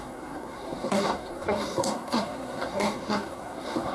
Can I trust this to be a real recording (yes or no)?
no